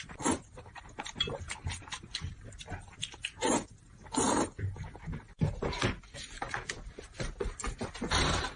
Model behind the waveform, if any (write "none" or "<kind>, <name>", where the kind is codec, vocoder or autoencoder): none